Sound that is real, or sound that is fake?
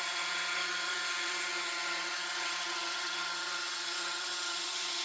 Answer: fake